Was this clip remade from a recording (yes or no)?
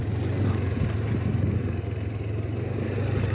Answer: no